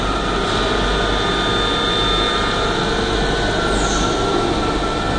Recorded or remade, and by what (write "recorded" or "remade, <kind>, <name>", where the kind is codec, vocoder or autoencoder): recorded